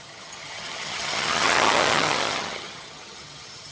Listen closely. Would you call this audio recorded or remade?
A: remade